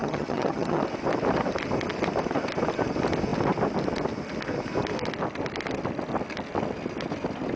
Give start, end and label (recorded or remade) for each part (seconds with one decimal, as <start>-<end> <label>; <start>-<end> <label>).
0.0-0.8 remade; 0.8-7.6 recorded